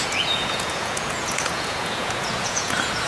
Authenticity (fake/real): fake